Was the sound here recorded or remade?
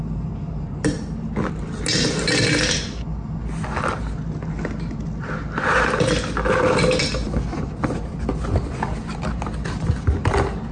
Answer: recorded